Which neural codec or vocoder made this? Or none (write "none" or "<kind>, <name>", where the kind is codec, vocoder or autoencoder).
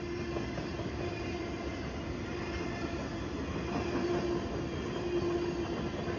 none